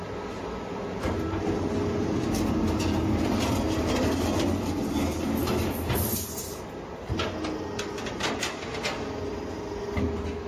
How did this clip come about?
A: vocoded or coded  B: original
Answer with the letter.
B